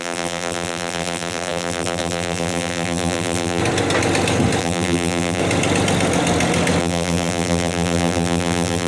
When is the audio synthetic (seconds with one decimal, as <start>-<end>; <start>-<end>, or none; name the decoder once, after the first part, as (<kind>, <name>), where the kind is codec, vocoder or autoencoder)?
0.0-3.6 (vocoder, BigVGAN v2); 4.6-5.4; 6.8-8.9